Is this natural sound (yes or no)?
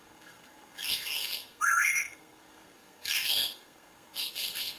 no